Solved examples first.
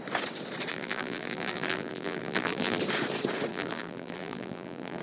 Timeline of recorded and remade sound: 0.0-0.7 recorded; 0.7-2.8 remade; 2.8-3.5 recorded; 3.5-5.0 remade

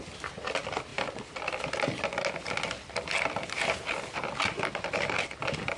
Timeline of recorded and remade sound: 0.0-5.8 recorded

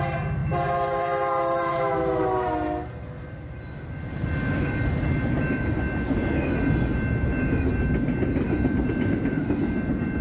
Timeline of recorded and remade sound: 0.0-10.2 recorded

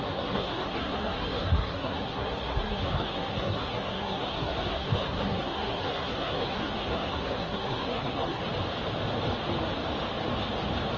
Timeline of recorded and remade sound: 0.0-8.4 remade; 8.4-11.0 recorded

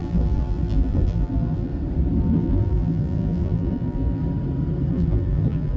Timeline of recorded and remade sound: 0.0-1.7 remade; 1.7-2.2 recorded; 2.2-4.2 remade; 4.2-4.9 recorded; 4.9-5.8 remade